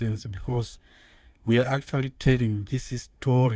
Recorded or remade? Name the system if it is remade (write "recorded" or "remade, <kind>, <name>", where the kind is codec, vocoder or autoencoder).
remade, codec, SNAC